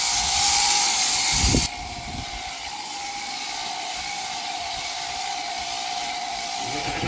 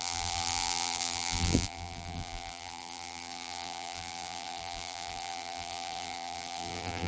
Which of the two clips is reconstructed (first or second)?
second